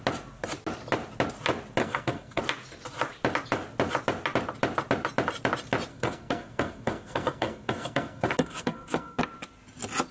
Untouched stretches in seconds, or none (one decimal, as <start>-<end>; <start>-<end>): 0.0-1.8; 2.4-5.9; 9.2-10.1